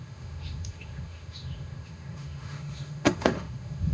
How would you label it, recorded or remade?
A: remade